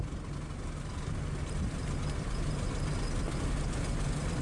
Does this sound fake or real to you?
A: real